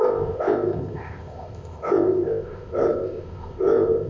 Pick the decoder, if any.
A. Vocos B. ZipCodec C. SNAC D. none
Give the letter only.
B